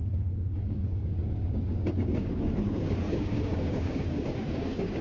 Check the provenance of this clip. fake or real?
fake